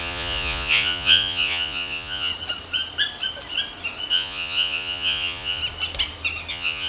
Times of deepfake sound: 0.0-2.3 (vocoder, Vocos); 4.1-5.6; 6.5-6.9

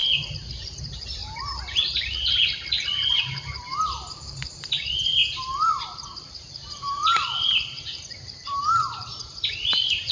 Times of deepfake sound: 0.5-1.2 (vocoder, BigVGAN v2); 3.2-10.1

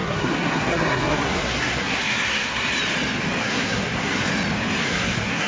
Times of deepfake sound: 0.0-2.7 (codec, SNAC); 3.4-4.3; 4.8-5.5

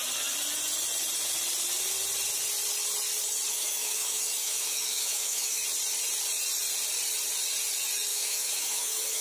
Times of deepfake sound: 3.5-5.6 (autoencoder, DAC-VAE); 8.1-9.2